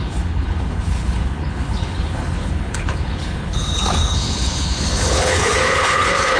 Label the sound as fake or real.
fake